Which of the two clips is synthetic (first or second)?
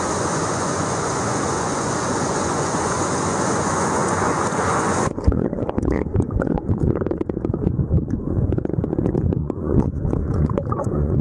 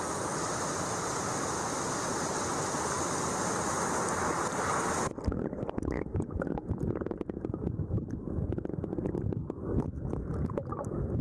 first